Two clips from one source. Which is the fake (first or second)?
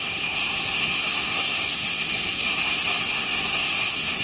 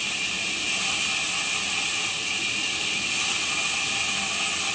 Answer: first